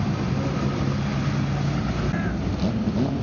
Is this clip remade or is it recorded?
recorded